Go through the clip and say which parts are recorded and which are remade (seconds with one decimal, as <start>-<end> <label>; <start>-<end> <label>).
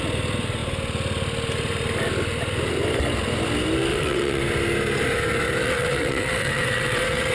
0.0-3.9 recorded; 3.9-4.4 remade; 4.4-5.6 recorded; 5.6-7.3 remade